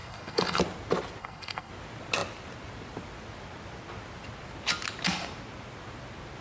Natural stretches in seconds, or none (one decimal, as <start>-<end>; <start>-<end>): 0.6-1.2; 1.7-6.4